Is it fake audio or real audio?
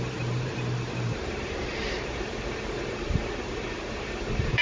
fake